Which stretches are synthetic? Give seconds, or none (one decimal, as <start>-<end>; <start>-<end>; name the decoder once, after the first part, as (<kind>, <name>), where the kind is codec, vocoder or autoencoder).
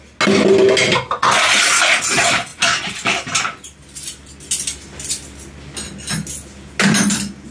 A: 2.5-4.3 (vocoder, BigVGAN v2)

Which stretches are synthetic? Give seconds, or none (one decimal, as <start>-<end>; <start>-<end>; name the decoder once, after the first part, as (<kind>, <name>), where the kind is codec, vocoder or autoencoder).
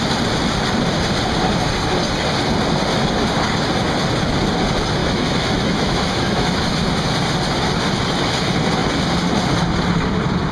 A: 5.0-6.7 (autoencoder, DAC-VAE)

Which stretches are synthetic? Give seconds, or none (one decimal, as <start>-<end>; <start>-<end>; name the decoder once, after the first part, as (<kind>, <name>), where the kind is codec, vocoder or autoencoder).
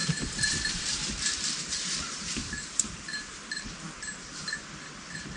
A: 0.0-0.8 (vocoder, BigVGAN v2); 2.4-3.7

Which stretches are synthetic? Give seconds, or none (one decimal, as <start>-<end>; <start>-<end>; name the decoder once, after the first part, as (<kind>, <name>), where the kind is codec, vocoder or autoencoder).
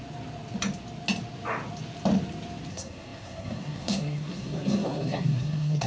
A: 2.7-5.9 (codec, SNAC)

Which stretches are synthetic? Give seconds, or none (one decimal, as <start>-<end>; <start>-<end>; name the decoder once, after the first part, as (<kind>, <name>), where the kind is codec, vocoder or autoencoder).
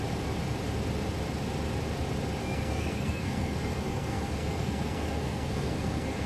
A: 2.4-6.3 (codec, SNAC)